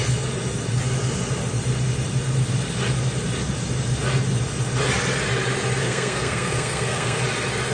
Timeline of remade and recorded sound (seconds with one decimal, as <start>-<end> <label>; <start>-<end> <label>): 0.0-5.8 recorded; 5.8-7.2 remade; 7.2-7.7 recorded